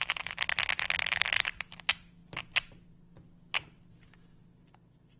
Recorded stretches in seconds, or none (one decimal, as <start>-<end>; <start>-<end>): 0.0-5.2